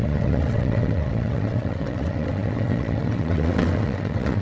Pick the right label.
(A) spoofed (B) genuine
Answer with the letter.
A